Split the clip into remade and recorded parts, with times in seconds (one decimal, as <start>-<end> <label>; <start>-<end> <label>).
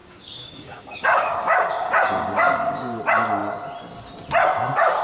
0.0-3.0 remade; 3.0-5.0 recorded